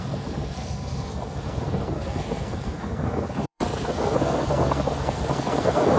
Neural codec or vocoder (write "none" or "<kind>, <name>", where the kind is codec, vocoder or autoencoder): codec, SNAC